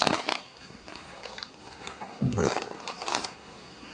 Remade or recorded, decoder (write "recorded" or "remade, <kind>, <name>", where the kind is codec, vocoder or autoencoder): remade, codec, SNAC